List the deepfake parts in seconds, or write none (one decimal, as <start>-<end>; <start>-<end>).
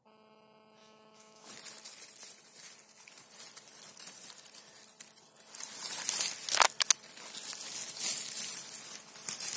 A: 0.8-1.5